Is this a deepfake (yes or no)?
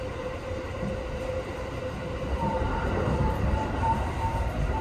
no